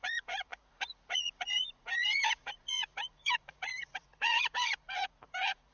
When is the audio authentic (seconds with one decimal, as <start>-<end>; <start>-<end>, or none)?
none